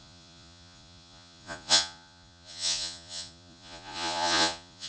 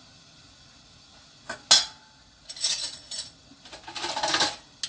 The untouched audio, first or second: second